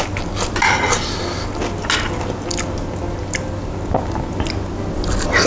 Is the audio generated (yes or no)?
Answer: no